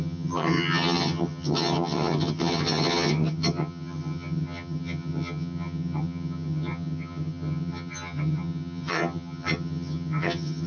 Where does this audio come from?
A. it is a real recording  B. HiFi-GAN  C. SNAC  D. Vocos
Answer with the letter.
B